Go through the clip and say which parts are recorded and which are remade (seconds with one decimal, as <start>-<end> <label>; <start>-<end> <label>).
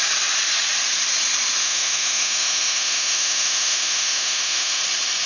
0.0-1.6 recorded; 1.6-4.8 remade; 4.8-5.3 recorded